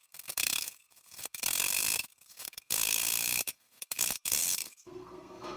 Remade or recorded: remade